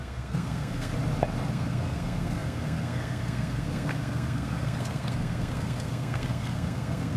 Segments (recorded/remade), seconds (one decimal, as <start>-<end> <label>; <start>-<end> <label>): 0.0-0.9 remade; 0.9-1.5 recorded; 1.5-7.2 remade